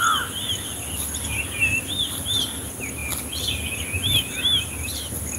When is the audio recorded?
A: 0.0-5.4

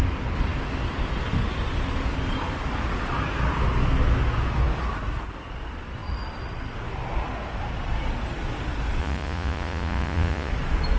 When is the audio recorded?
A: 0.0-9.0; 10.5-11.0

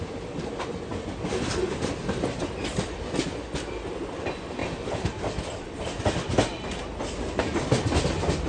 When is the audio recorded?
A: 0.0-8.5

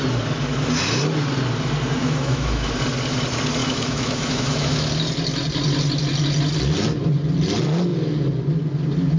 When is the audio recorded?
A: 0.0-2.0; 2.7-3.6; 4.9-9.2

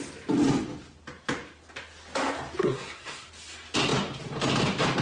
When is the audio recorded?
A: 0.0-2.6; 3.3-5.0

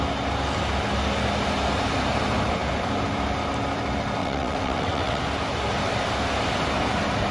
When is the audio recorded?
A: 0.0-4.2; 5.2-7.3

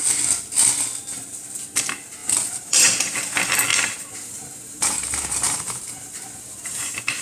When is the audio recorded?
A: 0.0-2.2; 2.8-3.7

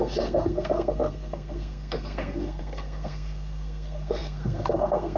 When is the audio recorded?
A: none